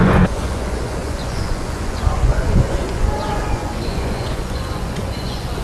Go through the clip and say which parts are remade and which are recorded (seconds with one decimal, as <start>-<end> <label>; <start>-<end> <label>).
0.0-5.6 remade